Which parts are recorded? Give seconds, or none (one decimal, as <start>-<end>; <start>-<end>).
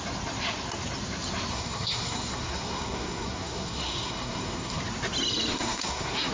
0.0-1.5; 4.8-5.5